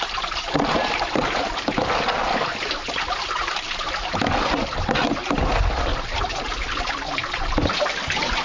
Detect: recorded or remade recorded